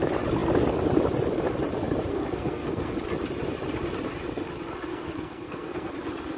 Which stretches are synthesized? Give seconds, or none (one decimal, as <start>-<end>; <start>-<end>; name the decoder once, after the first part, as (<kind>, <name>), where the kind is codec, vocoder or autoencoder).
2.1-2.9 (codec, SNAC); 4.9-5.9